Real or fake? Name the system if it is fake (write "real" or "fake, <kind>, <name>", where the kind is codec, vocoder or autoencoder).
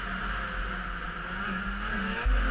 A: real